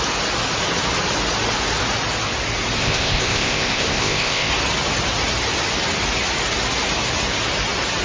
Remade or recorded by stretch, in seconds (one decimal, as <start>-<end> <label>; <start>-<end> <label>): 0.0-2.8 recorded; 2.8-4.5 remade; 4.5-8.0 recorded

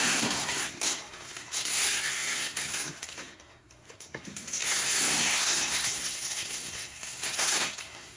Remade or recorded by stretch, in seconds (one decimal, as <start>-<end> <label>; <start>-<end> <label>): 0.0-8.2 remade

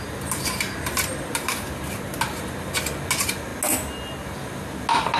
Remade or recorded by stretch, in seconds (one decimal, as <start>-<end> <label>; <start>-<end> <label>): 0.0-5.2 recorded

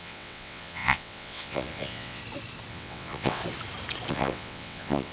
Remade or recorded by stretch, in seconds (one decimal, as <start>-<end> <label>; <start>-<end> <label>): 0.0-2.2 remade; 2.2-2.7 recorded; 2.7-3.4 remade; 3.4-4.1 recorded; 4.1-5.1 remade